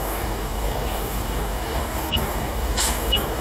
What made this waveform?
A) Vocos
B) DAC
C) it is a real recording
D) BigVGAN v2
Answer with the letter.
B